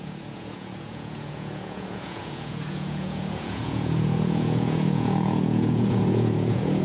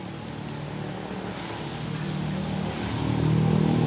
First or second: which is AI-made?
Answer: first